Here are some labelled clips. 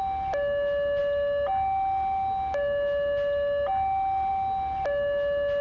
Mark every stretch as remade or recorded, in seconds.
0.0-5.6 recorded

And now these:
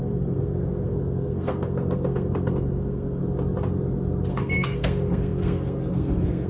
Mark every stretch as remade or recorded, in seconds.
0.0-3.2 remade; 3.2-4.3 recorded; 4.3-6.5 remade

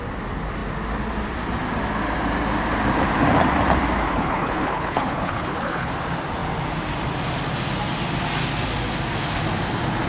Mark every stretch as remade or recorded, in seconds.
0.0-4.1 recorded; 4.1-5.9 remade; 5.9-10.1 recorded

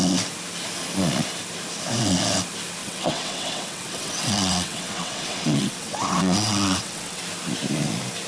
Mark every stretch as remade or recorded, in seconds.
0.0-2.8 recorded; 2.8-7.2 remade; 7.2-8.3 recorded

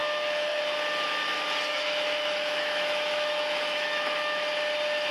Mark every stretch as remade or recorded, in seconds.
0.0-0.6 remade; 0.6-1.7 recorded; 1.7-4.5 remade; 4.5-5.1 recorded

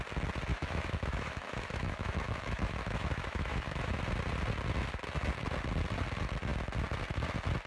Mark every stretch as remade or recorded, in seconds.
0.0-0.5 recorded; 0.5-4.0 remade; 4.0-7.7 recorded

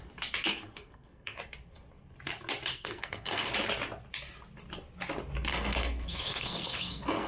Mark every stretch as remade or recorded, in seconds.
0.0-0.5 recorded; 0.5-1.4 remade; 1.4-2.7 recorded; 2.7-3.5 remade; 3.5-5.5 recorded; 5.5-7.3 remade